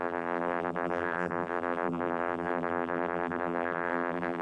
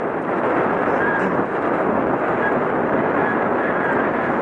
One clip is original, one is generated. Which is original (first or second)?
second